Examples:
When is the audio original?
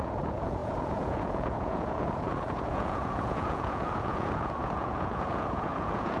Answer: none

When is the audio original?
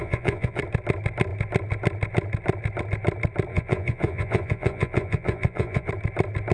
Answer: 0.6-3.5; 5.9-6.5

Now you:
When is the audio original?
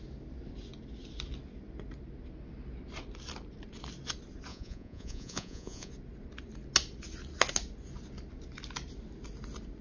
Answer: 0.0-4.5; 5.9-9.8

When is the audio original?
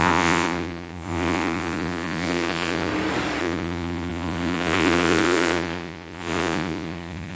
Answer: 2.9-3.4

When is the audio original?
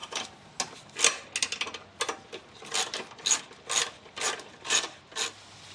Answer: 0.0-5.7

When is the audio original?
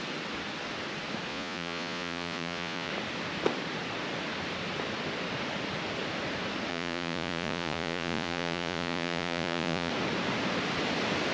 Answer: 0.0-1.3; 2.9-6.7; 9.9-11.3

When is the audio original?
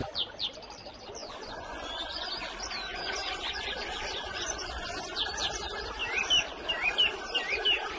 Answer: 0.0-1.2; 2.3-2.9; 5.2-8.0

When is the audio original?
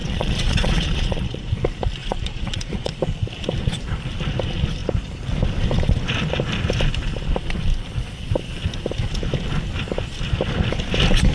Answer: 1.5-2.0; 2.9-11.3